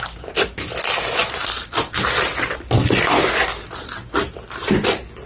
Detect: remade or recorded recorded